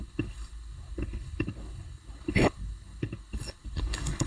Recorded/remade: remade